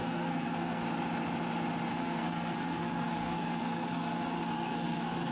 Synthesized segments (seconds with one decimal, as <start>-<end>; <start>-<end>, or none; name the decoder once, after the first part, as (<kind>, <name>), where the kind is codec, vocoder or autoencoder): 0.0-0.8 (codec, SNAC); 1.9-5.3